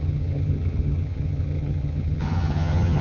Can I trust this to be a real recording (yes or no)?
no